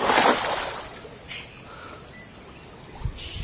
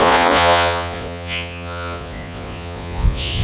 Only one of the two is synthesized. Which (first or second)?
second